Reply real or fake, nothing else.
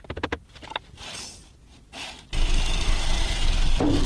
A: real